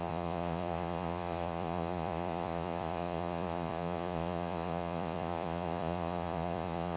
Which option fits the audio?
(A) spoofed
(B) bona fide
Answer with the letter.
A